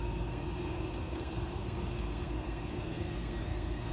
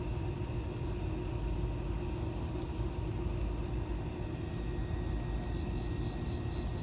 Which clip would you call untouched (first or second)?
second